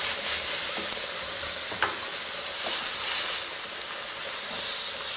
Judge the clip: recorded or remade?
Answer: recorded